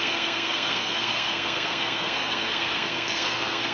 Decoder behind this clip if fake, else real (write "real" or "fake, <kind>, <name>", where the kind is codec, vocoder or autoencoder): fake, codec, SNAC